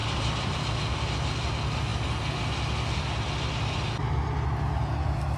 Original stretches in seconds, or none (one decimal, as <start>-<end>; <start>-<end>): 0.5-5.4